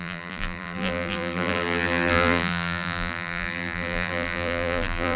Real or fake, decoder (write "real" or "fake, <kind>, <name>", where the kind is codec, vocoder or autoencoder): fake, vocoder, BigVGAN v2